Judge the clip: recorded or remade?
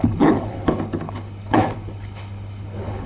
remade